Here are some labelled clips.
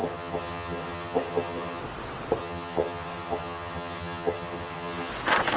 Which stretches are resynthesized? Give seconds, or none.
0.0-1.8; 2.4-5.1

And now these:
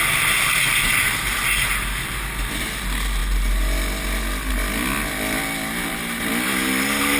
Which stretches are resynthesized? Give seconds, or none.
none